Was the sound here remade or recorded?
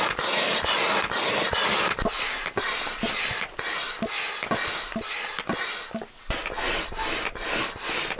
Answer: recorded